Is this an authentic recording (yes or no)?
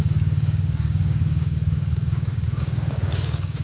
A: no